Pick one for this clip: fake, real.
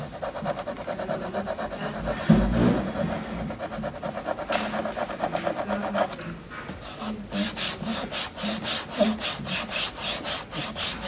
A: real